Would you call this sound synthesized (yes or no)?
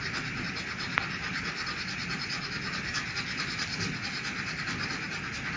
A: no